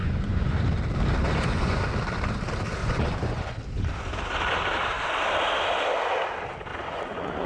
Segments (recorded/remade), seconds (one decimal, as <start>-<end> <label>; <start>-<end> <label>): 0.0-0.6 remade; 0.6-1.2 recorded; 1.2-1.8 remade; 1.8-2.8 recorded; 2.8-3.5 remade; 3.5-6.7 recorded; 6.7-7.5 remade